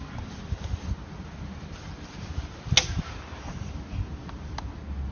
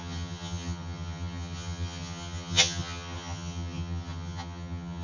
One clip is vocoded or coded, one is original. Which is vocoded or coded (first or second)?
second